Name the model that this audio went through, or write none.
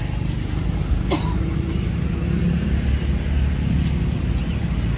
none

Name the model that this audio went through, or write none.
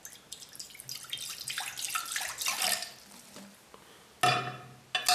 none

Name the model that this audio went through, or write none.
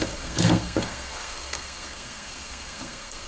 codec, SNAC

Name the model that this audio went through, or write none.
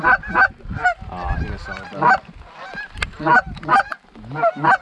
none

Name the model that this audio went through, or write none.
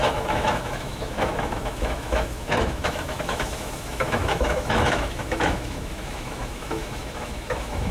autoencoder, DAC-VAE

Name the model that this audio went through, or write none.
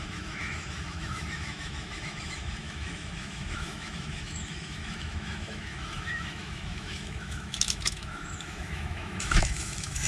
autoencoder, DAC-VAE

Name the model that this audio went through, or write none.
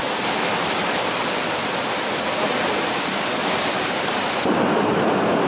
none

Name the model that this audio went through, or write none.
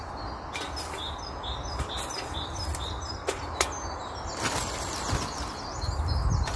none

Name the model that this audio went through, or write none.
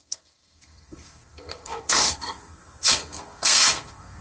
codec, SNAC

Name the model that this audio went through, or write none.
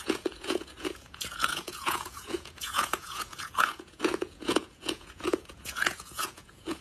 vocoder, Vocos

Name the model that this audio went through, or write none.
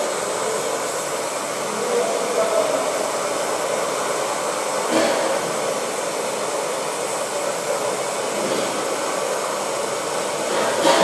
none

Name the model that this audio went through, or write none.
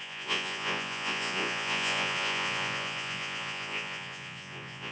vocoder, Vocos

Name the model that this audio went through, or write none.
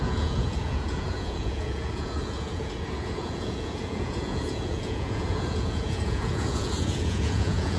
vocoder, Vocos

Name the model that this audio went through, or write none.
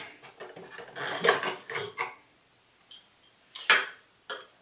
none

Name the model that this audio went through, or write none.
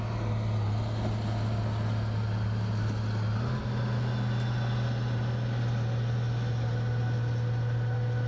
none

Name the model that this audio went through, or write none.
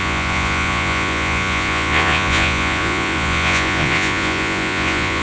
vocoder, Vocos